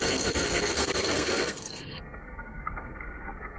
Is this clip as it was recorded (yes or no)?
no